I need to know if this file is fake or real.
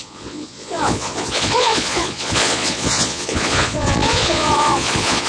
fake